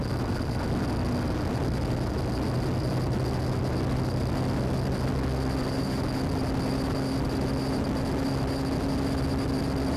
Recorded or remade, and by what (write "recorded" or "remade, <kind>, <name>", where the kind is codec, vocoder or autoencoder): recorded